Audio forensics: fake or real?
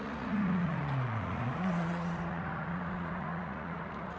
fake